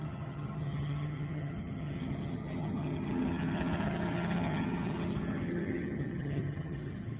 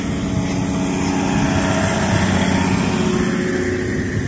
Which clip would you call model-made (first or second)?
first